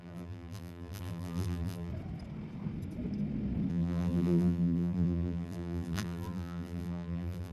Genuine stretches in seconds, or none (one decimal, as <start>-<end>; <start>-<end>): 1.9-3.7